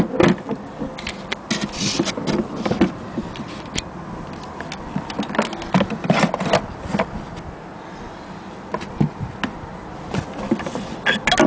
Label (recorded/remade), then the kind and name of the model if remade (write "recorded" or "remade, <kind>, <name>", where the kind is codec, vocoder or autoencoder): recorded